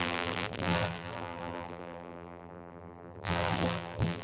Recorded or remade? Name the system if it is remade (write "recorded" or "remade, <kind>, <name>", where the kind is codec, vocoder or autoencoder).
remade, vocoder, BigVGAN v2